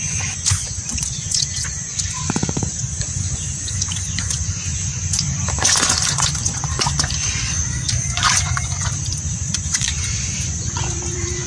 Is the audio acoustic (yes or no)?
no